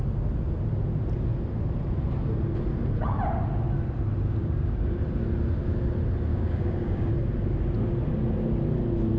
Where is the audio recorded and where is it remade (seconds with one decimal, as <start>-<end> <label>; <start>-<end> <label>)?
0.0-4.4 recorded; 4.4-5.0 remade; 5.0-6.3 recorded; 6.3-7.1 remade; 7.1-9.2 recorded